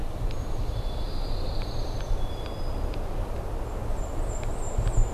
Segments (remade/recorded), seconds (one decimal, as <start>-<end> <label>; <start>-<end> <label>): 0.0-5.1 recorded